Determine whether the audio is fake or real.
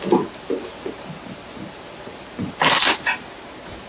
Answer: real